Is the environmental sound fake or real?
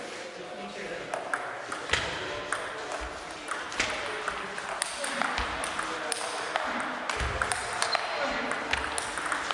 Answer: real